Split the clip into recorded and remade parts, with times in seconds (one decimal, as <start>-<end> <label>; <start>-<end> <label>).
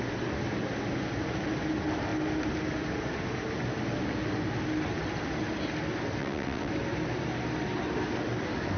0.0-6.2 recorded; 6.2-6.7 remade; 6.7-8.8 recorded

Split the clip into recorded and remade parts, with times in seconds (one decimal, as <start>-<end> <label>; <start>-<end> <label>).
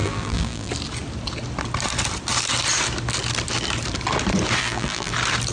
0.0-0.7 remade; 0.7-4.6 recorded; 4.6-5.1 remade; 5.1-5.5 recorded